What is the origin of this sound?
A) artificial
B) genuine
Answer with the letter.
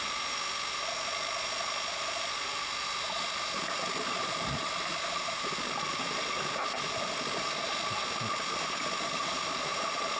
B